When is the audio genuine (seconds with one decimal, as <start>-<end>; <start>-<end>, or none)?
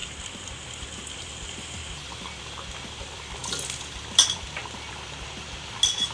0.0-6.1